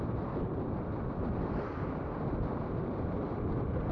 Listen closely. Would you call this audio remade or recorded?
recorded